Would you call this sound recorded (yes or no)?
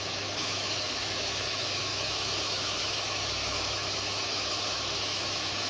no